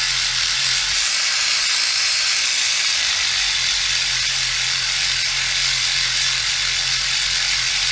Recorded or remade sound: recorded